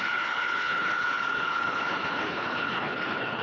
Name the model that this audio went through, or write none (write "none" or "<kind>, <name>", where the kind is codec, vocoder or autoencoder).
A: codec, HILCodec